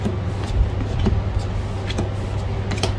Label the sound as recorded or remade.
recorded